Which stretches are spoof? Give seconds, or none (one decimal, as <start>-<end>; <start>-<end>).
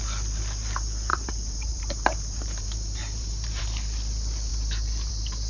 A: 1.1-3.6